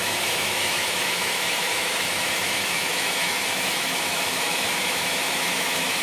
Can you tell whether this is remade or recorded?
remade